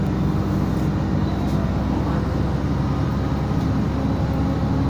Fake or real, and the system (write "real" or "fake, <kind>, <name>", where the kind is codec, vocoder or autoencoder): real